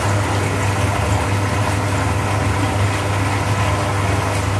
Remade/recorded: recorded